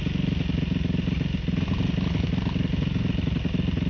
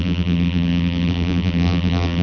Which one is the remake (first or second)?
second